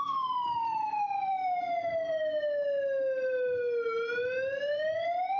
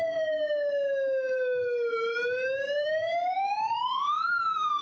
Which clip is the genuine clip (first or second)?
first